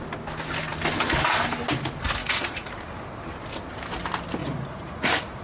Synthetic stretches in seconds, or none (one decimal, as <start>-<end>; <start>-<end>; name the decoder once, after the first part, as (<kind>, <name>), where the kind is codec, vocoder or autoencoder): 2.2-2.7 (vocoder, Vocos); 4.4-5.4